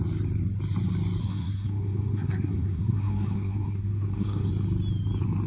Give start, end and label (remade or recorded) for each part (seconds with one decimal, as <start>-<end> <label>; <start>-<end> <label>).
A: 0.0-1.2 recorded; 1.2-4.5 remade; 4.5-5.5 recorded